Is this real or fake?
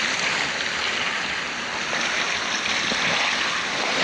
fake